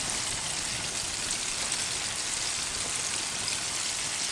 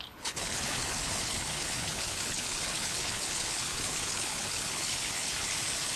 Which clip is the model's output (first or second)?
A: second